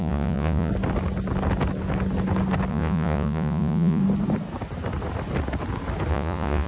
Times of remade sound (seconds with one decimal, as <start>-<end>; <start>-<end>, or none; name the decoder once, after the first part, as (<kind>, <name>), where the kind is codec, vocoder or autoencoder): 0.0-0.7 (vocoder, Vocos); 2.7-4.0; 6.1-6.7